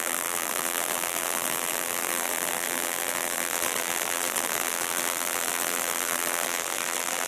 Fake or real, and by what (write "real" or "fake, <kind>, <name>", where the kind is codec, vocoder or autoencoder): fake, vocoder, BigVGAN v2